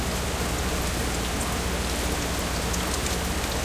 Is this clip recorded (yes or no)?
yes